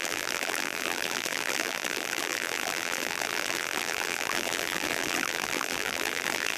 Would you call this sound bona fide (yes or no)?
no